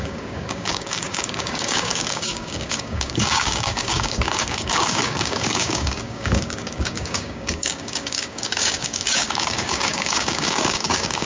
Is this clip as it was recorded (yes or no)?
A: no